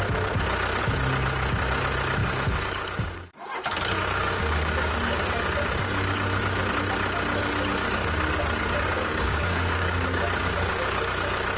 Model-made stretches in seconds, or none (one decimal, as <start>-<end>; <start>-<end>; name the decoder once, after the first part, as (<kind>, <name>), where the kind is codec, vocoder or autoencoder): 2.2-6.6 (codec, DAC); 7.4-11.6